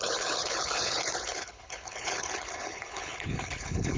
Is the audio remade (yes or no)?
yes